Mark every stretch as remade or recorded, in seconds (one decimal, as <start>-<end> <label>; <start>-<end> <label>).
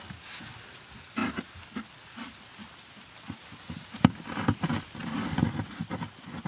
0.0-6.5 recorded